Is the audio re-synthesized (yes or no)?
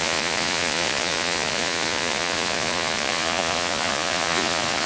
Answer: yes